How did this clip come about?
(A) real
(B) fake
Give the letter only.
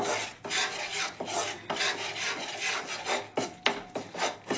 A